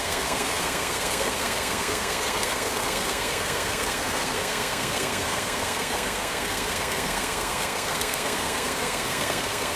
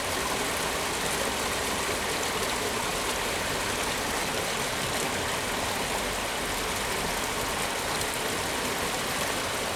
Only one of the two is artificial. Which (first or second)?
first